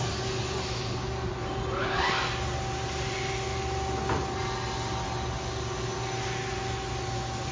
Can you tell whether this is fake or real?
real